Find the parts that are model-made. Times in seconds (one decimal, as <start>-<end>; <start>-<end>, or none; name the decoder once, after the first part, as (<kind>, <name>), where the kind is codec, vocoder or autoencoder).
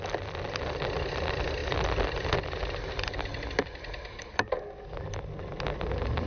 none